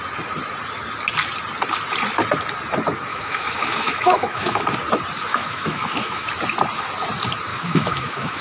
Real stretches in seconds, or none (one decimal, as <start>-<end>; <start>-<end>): 0.0-3.1; 4.6-5.3; 6.3-7.5